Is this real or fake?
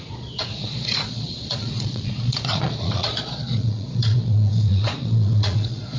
fake